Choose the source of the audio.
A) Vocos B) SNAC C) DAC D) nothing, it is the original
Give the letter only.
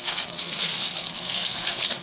B